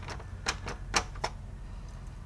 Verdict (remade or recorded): recorded